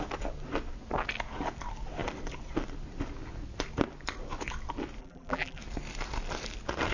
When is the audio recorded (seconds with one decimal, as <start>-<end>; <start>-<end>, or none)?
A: 0.0-5.0; 5.6-6.9